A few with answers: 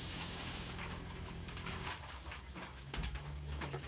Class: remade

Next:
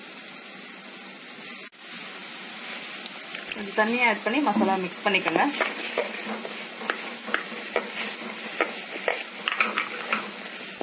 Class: recorded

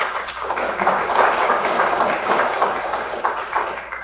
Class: remade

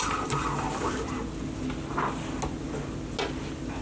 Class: recorded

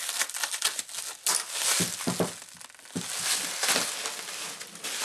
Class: recorded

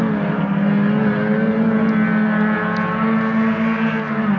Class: recorded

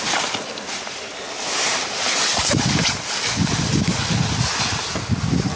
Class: recorded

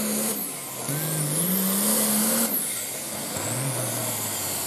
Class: recorded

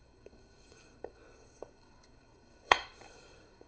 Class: remade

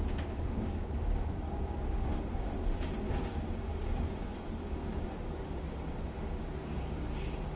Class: remade